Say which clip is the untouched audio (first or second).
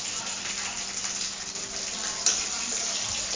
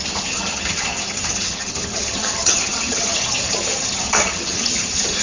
first